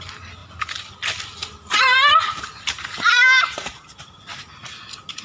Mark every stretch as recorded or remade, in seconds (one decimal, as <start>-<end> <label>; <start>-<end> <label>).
0.0-0.4 recorded; 0.4-0.9 remade; 0.9-1.4 recorded; 1.4-4.5 remade; 4.5-5.2 recorded